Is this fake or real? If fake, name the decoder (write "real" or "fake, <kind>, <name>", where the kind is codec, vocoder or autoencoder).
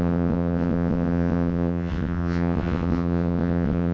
fake, vocoder, WaveNeXt